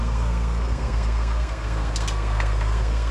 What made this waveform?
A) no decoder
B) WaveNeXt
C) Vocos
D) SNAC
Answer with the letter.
D